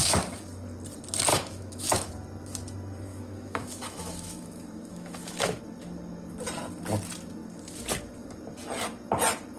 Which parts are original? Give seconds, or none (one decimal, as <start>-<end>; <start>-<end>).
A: 0.0-1.3; 2.1-3.1; 5.6-9.6